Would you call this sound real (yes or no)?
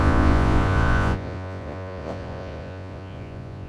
no